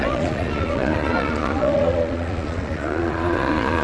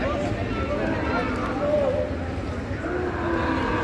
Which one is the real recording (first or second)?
second